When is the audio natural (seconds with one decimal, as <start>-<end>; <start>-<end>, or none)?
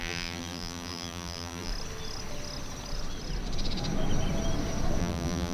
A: 1.7-5.0